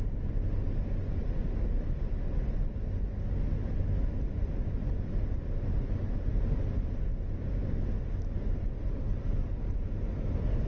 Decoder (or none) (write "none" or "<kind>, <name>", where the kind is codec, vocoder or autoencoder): none